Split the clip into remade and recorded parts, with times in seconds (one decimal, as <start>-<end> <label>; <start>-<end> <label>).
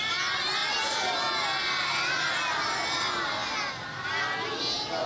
0.0-5.1 recorded